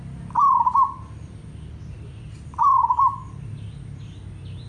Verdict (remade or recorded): recorded